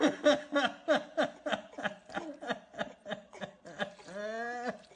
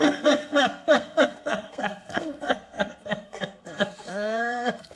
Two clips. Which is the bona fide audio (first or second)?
first